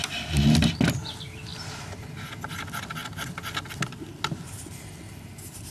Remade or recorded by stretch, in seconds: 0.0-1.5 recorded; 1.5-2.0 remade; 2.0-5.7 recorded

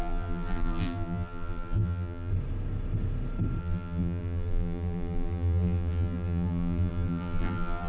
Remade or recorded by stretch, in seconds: 0.0-2.3 remade; 2.3-3.6 recorded; 3.6-7.9 remade

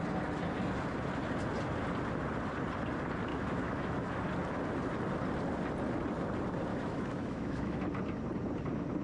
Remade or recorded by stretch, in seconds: 0.0-3.3 recorded; 3.3-4.2 remade; 4.2-6.7 recorded; 6.7-7.8 remade; 7.8-9.0 recorded

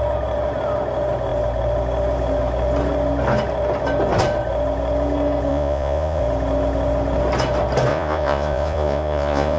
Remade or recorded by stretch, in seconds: 0.0-5.5 recorded; 5.5-6.2 remade; 6.2-7.9 recorded; 7.9-9.6 remade

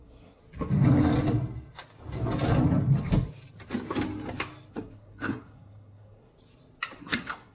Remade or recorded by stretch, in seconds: 0.0-0.4 remade; 0.4-4.7 recorded; 4.7-6.3 remade; 6.3-7.0 recorded; 7.0-7.5 remade